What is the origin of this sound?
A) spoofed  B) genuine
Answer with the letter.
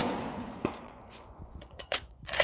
A